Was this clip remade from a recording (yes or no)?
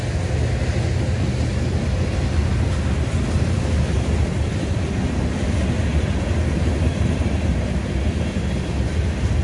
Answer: no